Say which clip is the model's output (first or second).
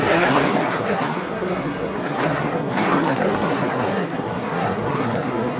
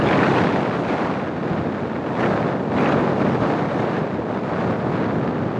first